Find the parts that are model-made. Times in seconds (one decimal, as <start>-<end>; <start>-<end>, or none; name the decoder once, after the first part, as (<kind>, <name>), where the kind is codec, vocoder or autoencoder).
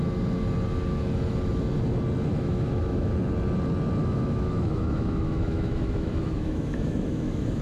2.3-3.1 (autoencoder, DAC-VAE); 4.0-7.6